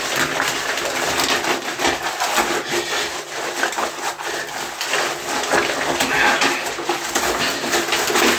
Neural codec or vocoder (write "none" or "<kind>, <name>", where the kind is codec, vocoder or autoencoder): none